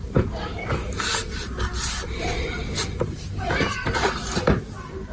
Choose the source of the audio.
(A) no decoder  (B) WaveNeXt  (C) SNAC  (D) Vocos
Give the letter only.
A